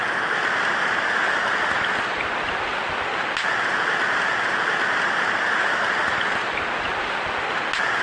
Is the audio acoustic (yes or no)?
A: yes